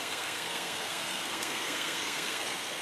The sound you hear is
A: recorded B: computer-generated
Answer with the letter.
B